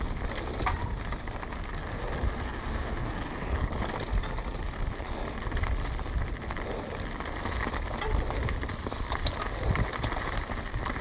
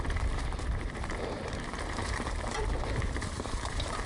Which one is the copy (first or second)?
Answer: second